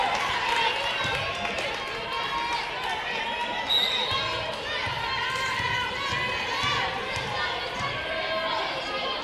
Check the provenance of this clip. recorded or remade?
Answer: recorded